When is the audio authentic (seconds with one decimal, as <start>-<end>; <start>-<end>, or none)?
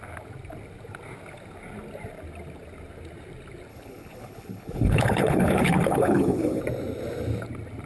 0.0-3.7; 6.6-7.9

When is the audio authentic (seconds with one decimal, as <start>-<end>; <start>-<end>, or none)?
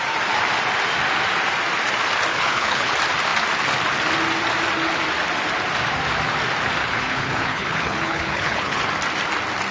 0.0-2.3; 2.9-6.8; 8.8-9.7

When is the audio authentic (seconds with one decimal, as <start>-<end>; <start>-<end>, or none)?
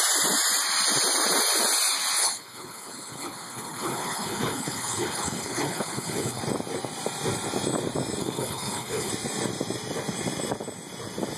0.0-2.2; 6.4-8.2; 9.1-11.4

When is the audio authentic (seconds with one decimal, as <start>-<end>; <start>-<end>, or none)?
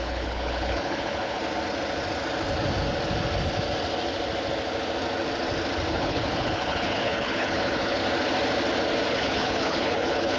1.4-5.9; 8.0-9.1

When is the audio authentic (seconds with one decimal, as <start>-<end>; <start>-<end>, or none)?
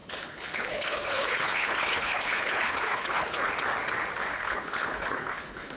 3.5-4.3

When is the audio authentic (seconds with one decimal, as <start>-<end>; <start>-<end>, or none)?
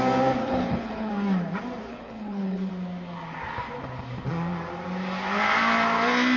0.0-0.4; 1.1-1.9; 2.7-6.4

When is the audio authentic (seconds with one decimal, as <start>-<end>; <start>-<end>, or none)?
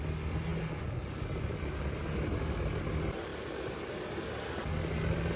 0.0-5.4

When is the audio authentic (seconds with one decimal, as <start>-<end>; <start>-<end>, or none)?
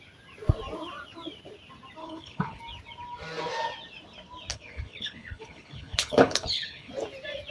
0.0-2.0; 2.6-4.5; 6.9-7.5